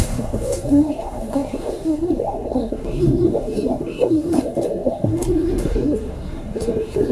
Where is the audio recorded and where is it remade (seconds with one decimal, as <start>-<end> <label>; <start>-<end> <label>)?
0.0-7.1 remade